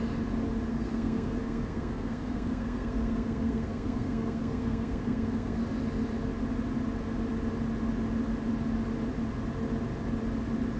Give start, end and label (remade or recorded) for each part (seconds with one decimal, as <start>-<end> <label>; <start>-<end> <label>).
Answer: 0.0-0.7 recorded; 0.7-5.6 remade; 5.6-10.8 recorded